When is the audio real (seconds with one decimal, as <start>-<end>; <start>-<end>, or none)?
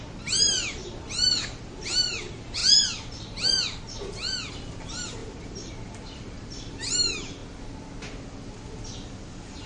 2.6-4.5; 7.4-8.2